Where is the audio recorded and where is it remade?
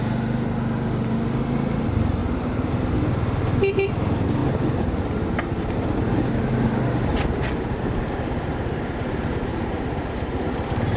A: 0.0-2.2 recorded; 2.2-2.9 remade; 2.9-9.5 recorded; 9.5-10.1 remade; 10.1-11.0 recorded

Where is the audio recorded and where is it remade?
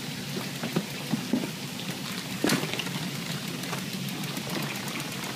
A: 0.0-5.4 recorded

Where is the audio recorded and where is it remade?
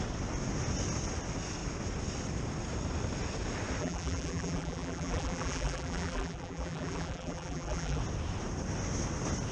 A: 0.0-3.8 recorded; 3.8-8.0 remade; 8.0-9.5 recorded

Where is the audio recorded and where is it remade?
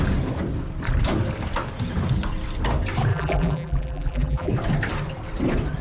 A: 0.0-3.1 recorded; 3.1-4.5 remade; 4.5-5.8 recorded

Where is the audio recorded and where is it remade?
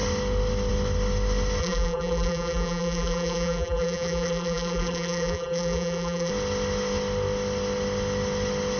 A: 0.0-1.6 recorded; 1.6-6.3 remade; 6.3-8.8 recorded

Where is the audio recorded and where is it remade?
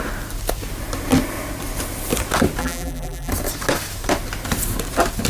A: 0.0-2.6 recorded; 2.6-3.3 remade; 3.3-5.3 recorded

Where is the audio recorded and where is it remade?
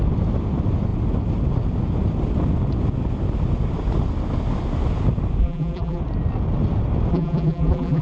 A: 0.0-5.4 recorded; 5.4-6.0 remade; 6.0-7.1 recorded; 7.1-8.0 remade